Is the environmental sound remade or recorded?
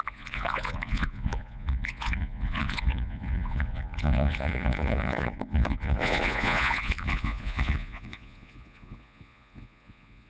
remade